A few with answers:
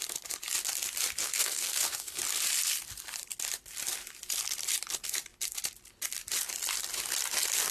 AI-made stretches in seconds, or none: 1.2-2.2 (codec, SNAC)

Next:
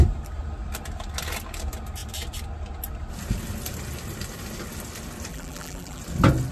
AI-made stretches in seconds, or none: 5.3-6.0 (vocoder, BigVGAN v2)

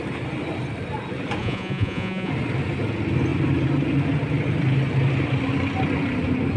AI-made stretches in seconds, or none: 1.4-2.3 (vocoder, Vocos)

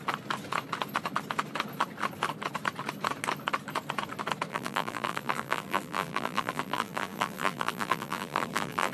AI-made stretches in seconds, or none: 4.5-8.9 (vocoder, BigVGAN v2)

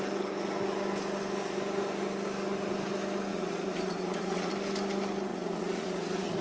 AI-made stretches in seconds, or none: 3.3-4.5 (vocoder, Vocos); 5.3-6.4

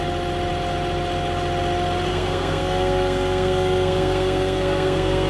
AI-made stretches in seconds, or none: 2.1-5.3 (codec, SNAC)